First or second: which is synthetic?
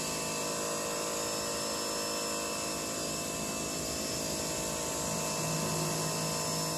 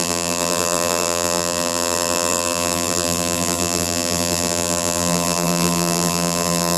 second